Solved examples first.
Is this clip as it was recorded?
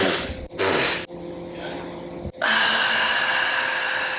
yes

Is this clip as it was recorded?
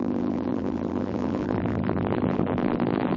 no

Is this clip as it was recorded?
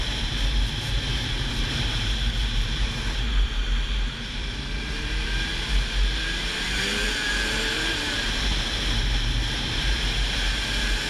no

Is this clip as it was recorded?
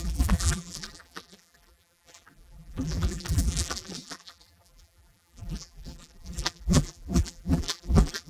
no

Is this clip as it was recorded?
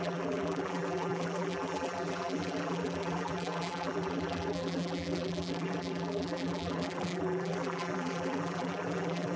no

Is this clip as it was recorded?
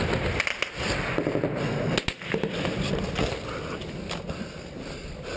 yes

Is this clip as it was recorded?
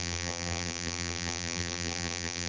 no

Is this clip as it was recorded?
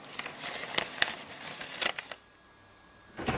yes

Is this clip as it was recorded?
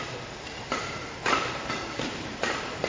no